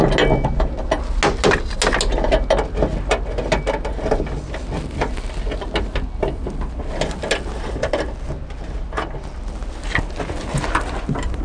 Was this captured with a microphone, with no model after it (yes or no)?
yes